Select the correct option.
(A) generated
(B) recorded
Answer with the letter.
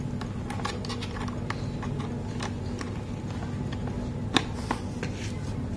B